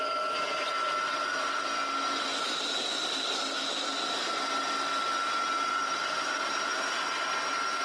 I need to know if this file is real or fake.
real